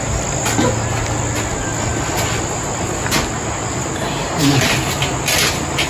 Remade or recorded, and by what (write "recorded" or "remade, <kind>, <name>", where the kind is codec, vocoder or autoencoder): recorded